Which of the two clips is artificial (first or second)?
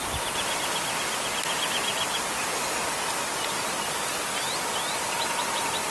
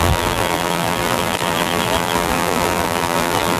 second